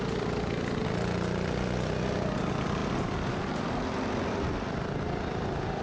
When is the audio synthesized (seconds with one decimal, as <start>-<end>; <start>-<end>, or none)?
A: none